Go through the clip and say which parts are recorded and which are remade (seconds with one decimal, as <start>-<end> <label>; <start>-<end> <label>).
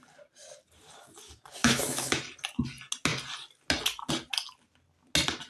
0.0-1.6 recorded; 1.6-2.2 remade; 2.2-5.5 recorded